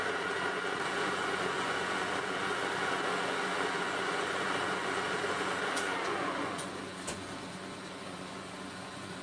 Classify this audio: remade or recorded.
remade